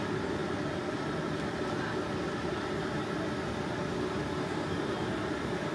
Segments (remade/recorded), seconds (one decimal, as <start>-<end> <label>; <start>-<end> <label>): 0.0-5.7 recorded